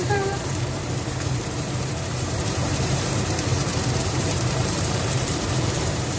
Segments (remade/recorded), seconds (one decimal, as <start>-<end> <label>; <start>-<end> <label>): 0.0-6.2 remade